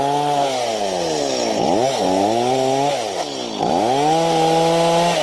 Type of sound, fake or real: real